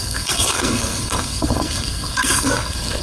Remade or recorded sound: remade